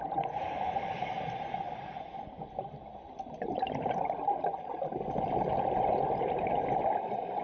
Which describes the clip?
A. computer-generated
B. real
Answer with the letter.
A